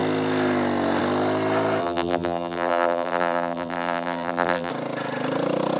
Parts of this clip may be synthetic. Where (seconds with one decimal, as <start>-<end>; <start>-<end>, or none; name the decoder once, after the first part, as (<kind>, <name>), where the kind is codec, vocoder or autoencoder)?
1.8-4.7 (vocoder, BigVGAN v2)